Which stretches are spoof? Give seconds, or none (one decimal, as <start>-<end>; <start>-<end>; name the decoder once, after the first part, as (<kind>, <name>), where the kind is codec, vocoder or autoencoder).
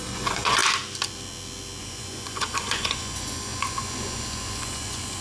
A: 0.0-0.6 (vocoder, Vocos); 1.8-5.2